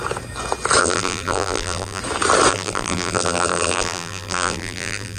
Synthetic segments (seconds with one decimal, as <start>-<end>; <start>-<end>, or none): 0.8-2.0; 2.5-5.2